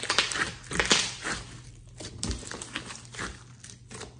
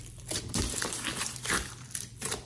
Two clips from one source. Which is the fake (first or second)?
second